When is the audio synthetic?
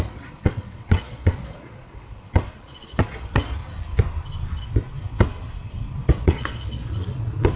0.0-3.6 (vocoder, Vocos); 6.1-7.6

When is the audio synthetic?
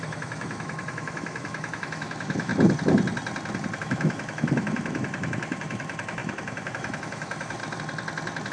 0.0-2.5 (autoencoder, DAC-VAE); 3.8-7.6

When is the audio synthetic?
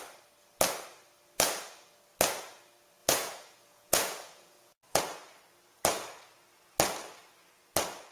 3.0-5.0 (vocoder, Vocos)